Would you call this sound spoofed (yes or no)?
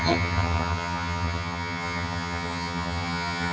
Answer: yes